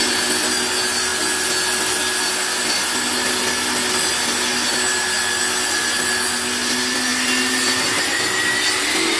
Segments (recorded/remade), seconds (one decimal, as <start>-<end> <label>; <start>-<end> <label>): 0.0-9.2 recorded